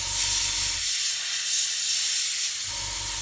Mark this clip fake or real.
real